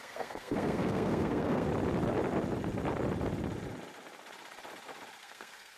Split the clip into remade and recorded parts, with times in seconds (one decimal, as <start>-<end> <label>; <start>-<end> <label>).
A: 0.0-1.7 remade; 1.7-5.2 recorded; 5.2-5.8 remade